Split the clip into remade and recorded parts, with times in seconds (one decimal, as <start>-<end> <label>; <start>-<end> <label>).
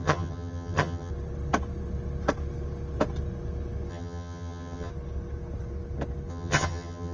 0.0-1.1 remade; 1.1-3.9 recorded; 3.9-4.9 remade; 4.9-6.3 recorded; 6.3-7.1 remade